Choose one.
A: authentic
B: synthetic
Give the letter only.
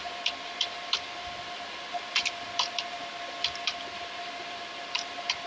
A